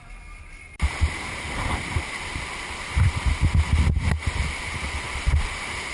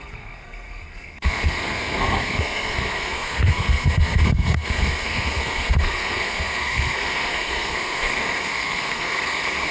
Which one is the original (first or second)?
first